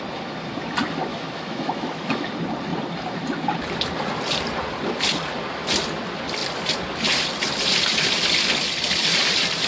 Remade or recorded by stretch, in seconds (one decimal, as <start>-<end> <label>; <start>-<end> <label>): 0.0-1.1 recorded; 1.1-2.3 remade; 2.3-9.7 recorded